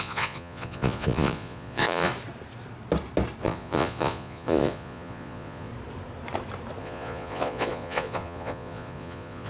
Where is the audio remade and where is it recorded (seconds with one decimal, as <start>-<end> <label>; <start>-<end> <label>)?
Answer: 0.0-2.1 remade; 2.1-3.4 recorded; 3.4-5.7 remade; 5.7-6.8 recorded; 6.8-9.5 remade